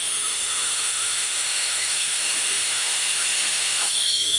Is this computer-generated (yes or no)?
yes